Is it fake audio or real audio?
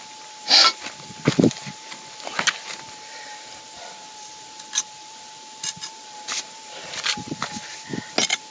real